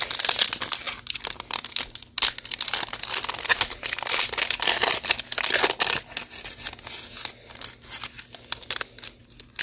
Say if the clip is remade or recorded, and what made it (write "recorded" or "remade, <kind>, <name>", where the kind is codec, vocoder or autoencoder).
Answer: recorded